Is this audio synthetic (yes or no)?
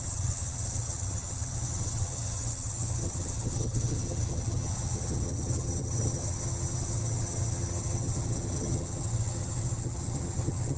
yes